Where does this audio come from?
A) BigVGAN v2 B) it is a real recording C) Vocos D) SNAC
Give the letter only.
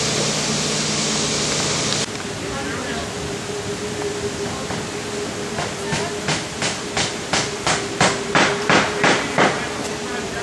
B